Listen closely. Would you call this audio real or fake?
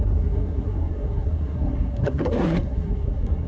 fake